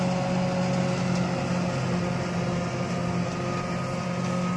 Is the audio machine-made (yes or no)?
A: no